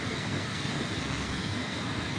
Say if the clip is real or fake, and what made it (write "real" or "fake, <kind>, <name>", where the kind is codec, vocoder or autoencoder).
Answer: fake, codec, SNAC